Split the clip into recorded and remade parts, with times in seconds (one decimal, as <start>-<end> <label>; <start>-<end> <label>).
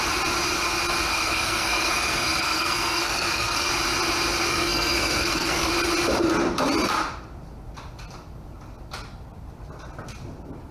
0.0-1.1 recorded; 1.1-3.7 remade; 3.7-4.5 recorded; 4.5-5.7 remade; 5.7-10.7 recorded